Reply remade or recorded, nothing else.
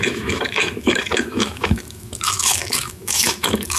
remade